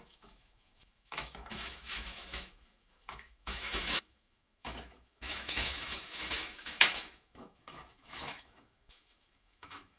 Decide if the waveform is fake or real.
fake